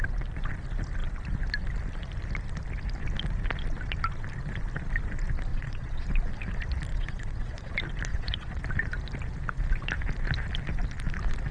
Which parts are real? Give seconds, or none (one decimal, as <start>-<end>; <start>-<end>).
0.0-5.5; 6.1-6.9; 7.7-8.1; 8.6-11.5